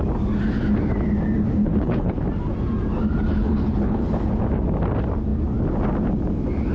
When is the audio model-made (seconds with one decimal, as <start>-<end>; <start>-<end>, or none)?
1.6-2.1; 3.3-4.3